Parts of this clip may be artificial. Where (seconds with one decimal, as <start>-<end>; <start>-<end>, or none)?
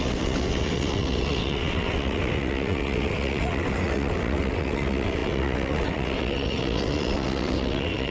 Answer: 0.0-8.1